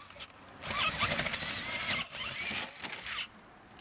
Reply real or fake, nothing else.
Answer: real